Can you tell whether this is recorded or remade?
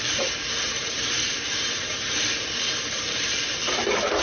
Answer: remade